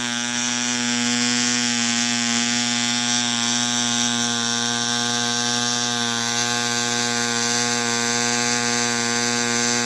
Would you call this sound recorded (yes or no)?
yes